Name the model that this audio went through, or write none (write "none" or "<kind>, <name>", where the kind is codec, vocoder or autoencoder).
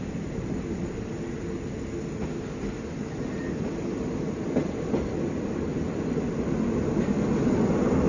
none